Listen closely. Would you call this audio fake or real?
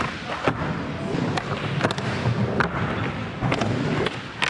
real